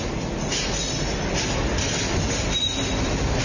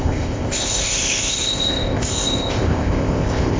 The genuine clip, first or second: first